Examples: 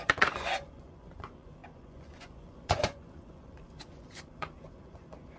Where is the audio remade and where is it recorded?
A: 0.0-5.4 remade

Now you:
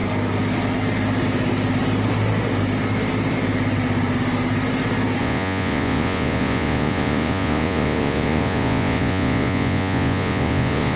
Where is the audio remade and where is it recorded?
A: 0.0-5.2 recorded; 5.2-11.0 remade

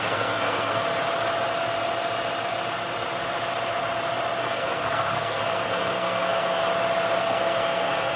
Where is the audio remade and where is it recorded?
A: 0.0-0.8 remade; 0.8-4.4 recorded; 4.4-6.6 remade; 6.6-7.2 recorded; 7.2-8.2 remade

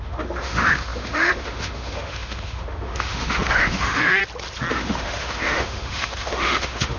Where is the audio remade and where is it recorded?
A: 0.0-4.2 remade; 4.2-4.7 recorded; 4.7-7.0 remade

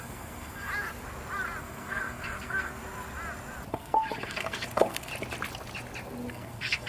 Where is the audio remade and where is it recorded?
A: 0.0-0.7 remade; 0.7-1.6 recorded; 1.6-2.8 remade; 2.8-3.7 recorded; 3.7-5.1 remade; 5.1-6.3 recorded; 6.3-6.9 remade

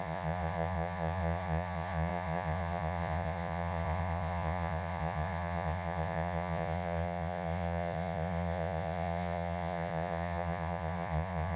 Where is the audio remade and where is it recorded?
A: 0.0-11.6 remade